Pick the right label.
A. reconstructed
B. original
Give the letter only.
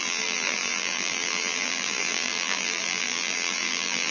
A